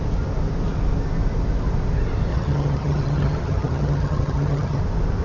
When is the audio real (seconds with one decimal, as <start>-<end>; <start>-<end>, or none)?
0.0-2.3; 4.8-5.2